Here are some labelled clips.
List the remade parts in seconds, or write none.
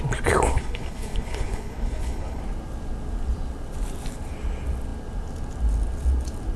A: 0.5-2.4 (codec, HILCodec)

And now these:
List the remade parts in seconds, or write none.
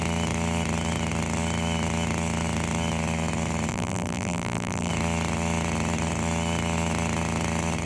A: 3.7-4.9 (vocoder, BigVGAN v2)